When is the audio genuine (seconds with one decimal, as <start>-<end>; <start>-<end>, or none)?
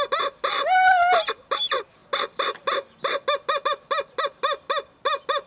0.0-5.5